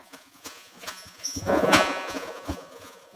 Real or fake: fake